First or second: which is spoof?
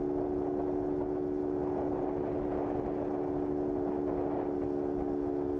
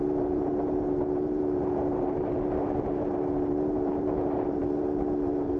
second